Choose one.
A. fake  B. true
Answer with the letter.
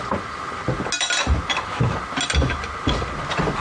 B